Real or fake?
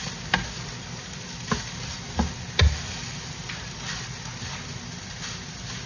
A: real